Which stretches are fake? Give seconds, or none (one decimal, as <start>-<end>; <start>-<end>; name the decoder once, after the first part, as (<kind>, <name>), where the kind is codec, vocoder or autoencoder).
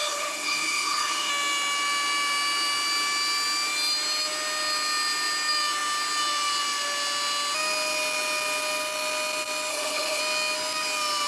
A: 0.0-1.3 (codec, HILCodec); 9.7-10.2